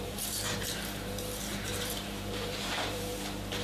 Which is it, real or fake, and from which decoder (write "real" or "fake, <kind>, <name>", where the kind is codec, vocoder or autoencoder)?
fake, vocoder, BigVGAN v2